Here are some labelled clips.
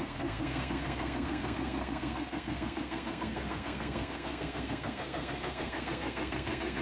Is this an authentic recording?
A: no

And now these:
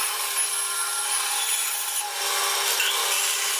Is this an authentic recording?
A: yes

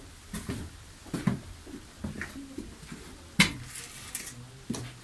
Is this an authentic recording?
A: yes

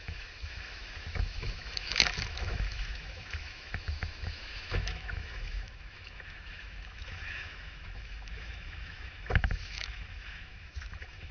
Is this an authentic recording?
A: no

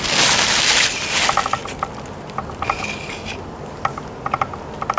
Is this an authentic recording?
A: yes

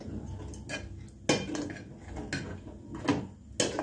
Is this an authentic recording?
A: yes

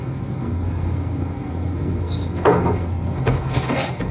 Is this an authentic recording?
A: no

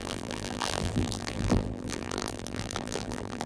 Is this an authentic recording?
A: no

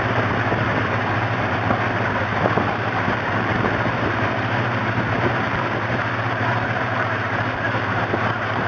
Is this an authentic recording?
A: no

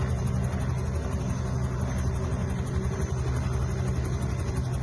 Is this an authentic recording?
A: yes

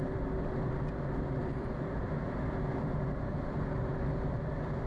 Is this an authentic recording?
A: no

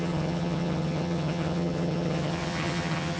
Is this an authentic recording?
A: no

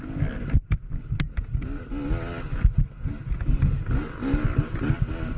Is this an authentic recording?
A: yes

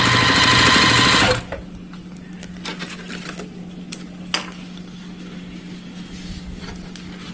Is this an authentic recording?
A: yes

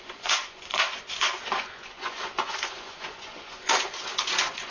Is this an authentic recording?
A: no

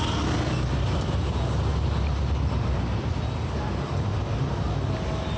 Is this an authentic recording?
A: yes